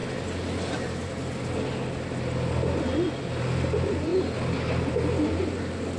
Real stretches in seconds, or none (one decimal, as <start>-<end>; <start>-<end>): 0.0-6.0